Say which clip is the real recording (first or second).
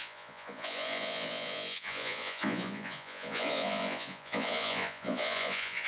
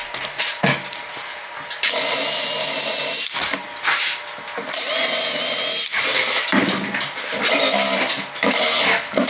second